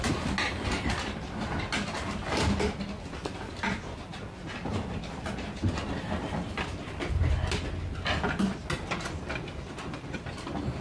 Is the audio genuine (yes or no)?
yes